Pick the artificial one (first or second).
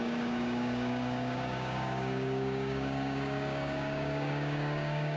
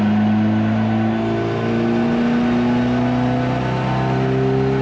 first